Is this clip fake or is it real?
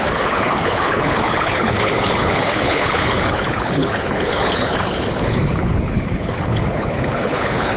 fake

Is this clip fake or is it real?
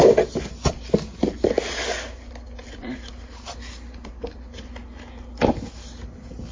real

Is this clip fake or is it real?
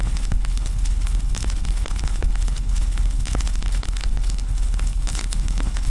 fake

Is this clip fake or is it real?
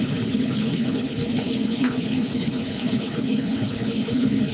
fake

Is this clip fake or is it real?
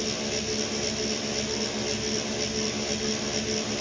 real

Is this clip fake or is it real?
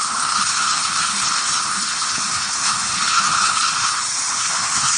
fake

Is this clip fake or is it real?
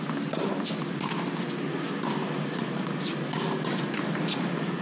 real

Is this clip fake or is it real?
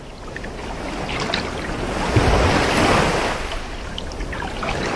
real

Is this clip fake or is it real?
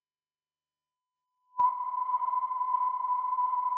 fake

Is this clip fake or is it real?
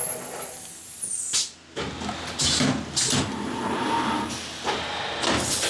real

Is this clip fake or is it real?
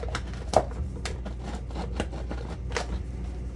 real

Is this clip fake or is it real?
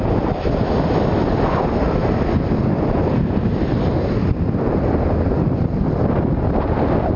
real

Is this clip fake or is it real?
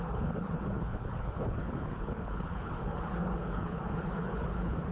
fake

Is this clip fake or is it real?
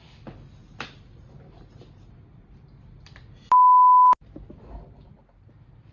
real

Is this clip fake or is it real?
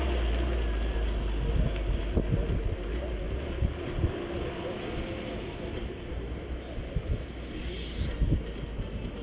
real